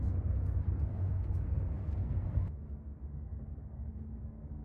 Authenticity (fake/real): fake